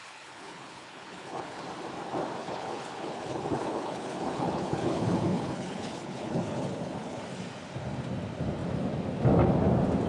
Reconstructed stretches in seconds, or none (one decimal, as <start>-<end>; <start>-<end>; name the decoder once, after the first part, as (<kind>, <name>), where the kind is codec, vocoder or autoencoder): 0.0-1.6 (codec, HILCodec); 2.4-7.2